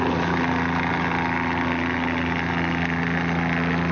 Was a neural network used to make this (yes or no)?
no